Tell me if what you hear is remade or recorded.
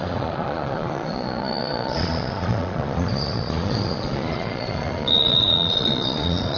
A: remade